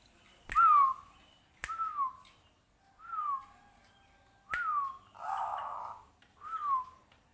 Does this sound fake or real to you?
real